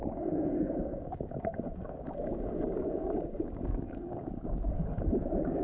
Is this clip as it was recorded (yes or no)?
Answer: no